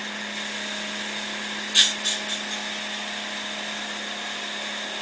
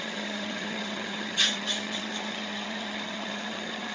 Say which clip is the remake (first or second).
second